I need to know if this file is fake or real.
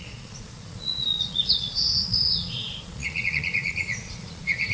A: fake